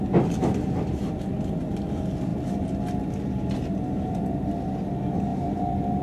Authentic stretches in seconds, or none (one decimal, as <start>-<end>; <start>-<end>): 0.0-5.3